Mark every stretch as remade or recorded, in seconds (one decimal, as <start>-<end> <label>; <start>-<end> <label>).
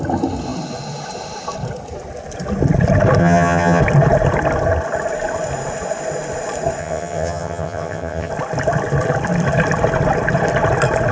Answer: 0.0-3.2 recorded; 3.2-3.8 remade; 3.8-6.8 recorded; 6.8-8.3 remade; 8.3-11.1 recorded